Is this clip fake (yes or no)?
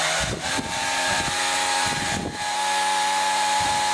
yes